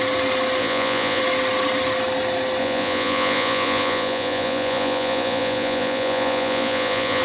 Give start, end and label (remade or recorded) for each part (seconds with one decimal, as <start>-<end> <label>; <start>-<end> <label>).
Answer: 0.0-0.6 recorded; 0.6-1.2 remade; 1.2-2.6 recorded; 2.6-7.2 remade